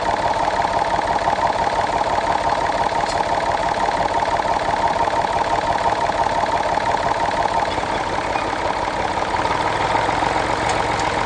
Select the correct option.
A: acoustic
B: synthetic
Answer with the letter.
A